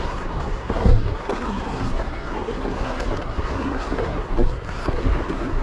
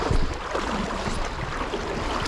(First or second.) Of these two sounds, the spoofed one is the first